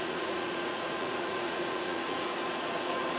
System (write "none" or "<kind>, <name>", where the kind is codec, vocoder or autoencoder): vocoder, Vocos